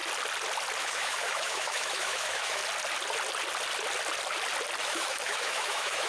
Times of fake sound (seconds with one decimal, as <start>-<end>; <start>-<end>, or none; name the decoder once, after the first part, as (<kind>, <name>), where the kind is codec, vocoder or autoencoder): 0.8-2.6 (autoencoder, DAC-VAE); 4.8-6.1